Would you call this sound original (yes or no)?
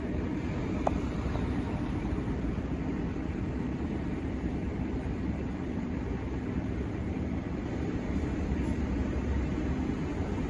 no